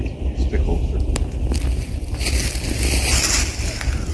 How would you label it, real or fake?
real